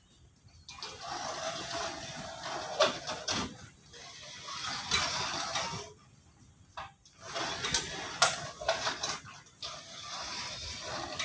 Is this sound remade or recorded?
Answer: recorded